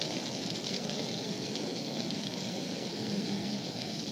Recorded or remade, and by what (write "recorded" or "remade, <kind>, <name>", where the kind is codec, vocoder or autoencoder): remade, codec, SNAC